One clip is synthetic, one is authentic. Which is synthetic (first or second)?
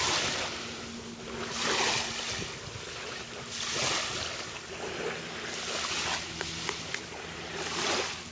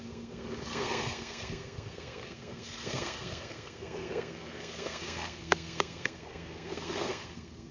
second